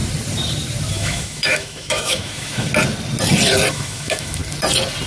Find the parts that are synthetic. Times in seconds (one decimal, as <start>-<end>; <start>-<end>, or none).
0.9-2.7; 3.7-4.4